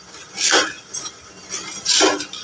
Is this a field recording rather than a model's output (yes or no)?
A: yes